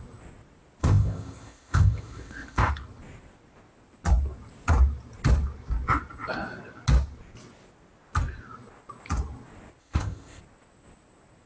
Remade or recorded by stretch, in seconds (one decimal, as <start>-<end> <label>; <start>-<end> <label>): 0.0-0.8 recorded; 0.8-2.7 remade; 2.7-9.8 recorded; 9.8-10.4 remade; 10.4-11.5 recorded